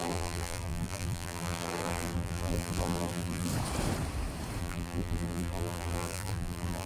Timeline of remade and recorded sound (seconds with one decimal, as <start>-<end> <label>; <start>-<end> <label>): 0.0-3.5 remade; 3.5-4.6 recorded; 4.6-6.9 remade